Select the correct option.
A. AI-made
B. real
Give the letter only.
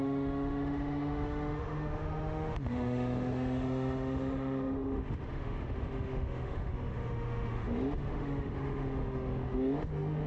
A